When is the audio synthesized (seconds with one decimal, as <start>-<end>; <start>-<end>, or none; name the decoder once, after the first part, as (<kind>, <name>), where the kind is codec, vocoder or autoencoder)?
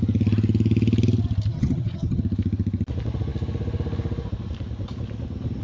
1.5-2.2 (vocoder, HiFi-GAN)